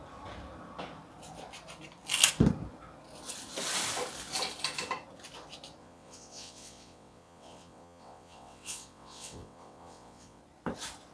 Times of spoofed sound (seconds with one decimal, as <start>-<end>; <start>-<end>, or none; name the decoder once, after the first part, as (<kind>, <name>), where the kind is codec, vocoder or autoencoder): 5.8-10.4 (vocoder, WaveNeXt)

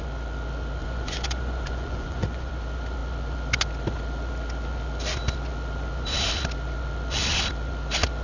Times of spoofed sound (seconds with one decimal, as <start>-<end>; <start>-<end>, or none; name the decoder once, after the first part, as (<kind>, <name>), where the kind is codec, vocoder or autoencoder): 0.8-2.5 (vocoder, Vocos)

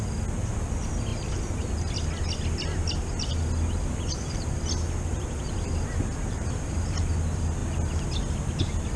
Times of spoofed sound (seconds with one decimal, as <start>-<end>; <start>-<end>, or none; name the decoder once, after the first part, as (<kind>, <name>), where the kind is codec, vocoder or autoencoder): 1.1-1.7 (vocoder, BigVGAN v2); 5.1-7.0

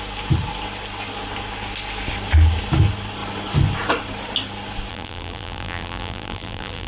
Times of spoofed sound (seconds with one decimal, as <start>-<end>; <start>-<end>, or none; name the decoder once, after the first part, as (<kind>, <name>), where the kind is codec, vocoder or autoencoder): 4.9-6.9 (vocoder, BigVGAN v2)